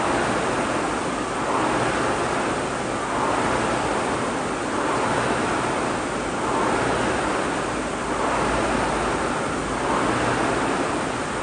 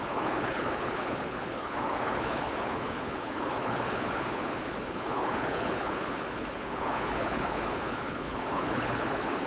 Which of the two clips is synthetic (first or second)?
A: second